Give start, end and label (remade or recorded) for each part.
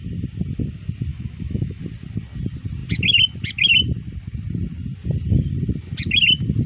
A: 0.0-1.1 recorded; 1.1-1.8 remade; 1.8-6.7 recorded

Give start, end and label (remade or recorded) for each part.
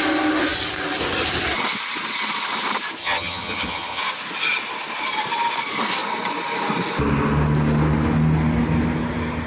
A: 0.0-3.0 recorded; 3.0-4.0 remade; 4.0-9.5 recorded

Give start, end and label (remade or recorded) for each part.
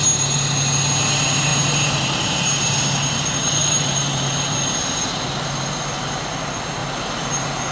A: 0.0-1.5 recorded; 1.5-2.3 remade; 2.3-3.6 recorded; 3.6-6.3 remade; 6.3-6.8 recorded; 6.8-7.7 remade